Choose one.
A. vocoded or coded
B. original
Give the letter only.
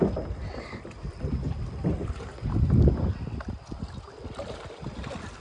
B